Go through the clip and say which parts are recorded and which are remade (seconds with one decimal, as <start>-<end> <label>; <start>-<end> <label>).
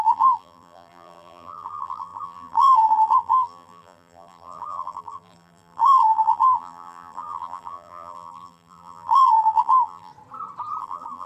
0.0-10.1 remade; 10.1-10.8 recorded; 10.8-11.3 remade